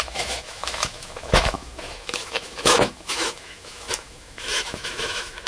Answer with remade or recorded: remade